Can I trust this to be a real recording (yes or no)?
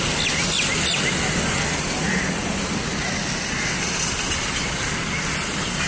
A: yes